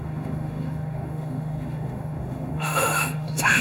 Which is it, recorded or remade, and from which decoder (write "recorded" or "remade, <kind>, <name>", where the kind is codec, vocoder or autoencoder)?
remade, autoencoder, DAC-VAE